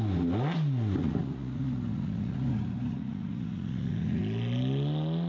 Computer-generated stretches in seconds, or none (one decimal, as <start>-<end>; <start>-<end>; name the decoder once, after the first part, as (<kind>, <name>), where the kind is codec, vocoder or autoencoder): 1.0-4.2 (vocoder, Vocos)

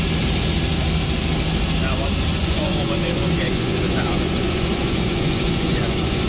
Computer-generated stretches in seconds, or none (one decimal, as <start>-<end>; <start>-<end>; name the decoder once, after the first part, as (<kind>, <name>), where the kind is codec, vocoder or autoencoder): 2.4-6.3 (vocoder, Vocos)

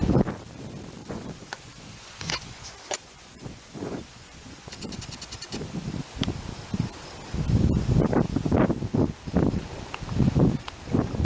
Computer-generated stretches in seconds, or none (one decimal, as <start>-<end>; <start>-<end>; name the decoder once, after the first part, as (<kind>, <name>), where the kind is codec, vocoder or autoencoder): 1.0-5.9 (vocoder, Vocos)

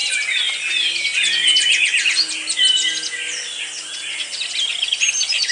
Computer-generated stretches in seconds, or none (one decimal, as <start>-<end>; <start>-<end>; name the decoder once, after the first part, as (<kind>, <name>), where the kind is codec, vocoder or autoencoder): none

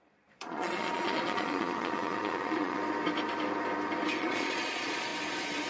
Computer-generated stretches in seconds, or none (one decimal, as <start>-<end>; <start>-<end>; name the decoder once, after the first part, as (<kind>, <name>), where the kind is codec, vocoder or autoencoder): 0.0-2.8 (vocoder, Vocos); 4.2-5.1

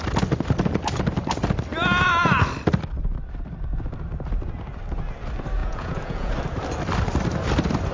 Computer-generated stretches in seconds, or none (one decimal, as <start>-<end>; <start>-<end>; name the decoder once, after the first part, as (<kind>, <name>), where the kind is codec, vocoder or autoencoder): 5.6-6.3 (vocoder, Vocos)